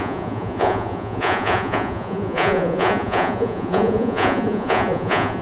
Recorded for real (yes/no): no